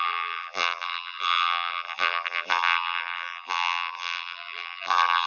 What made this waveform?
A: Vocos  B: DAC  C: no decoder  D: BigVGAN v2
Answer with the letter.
D